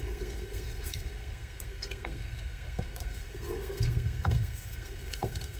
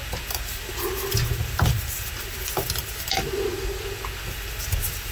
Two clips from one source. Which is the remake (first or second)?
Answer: first